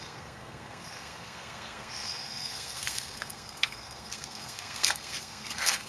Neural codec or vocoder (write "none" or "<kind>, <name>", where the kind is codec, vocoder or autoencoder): codec, SNAC